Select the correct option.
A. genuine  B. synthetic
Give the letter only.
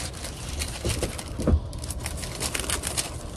A